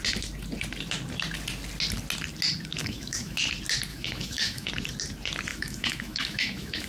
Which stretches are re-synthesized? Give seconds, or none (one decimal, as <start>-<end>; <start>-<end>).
2.8-3.4; 3.9-4.7; 5.5-6.9